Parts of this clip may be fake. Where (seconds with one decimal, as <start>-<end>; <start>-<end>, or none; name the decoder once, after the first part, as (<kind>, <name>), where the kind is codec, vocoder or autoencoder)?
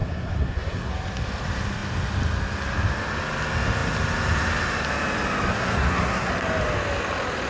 0.0-0.9 (codec, SNAC); 5.5-6.3